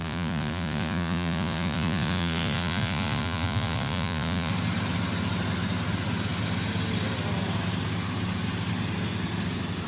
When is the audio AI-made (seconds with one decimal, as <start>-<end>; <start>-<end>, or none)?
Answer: 0.0-4.5